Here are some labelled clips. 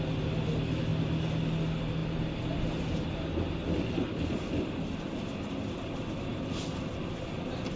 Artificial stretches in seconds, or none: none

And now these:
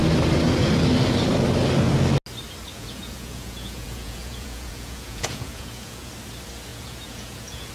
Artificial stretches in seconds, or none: 2.7-6.1 (vocoder, Vocos); 6.7-7.7

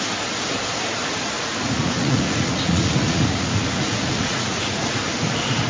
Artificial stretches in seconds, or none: 1.6-5.0 (vocoder, Vocos)